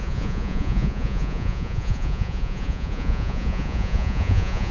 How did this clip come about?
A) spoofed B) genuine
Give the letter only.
A